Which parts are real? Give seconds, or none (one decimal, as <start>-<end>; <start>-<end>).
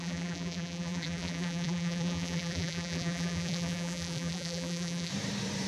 5.1-5.7